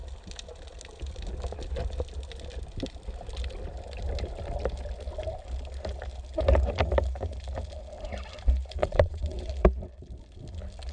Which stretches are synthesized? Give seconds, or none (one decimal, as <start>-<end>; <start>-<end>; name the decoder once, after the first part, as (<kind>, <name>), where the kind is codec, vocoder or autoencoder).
8.8-9.5 (vocoder, WaveNeXt)